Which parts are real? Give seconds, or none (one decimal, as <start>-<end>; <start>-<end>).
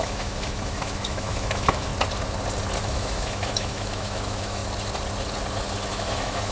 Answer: 1.9-2.8; 4.6-5.9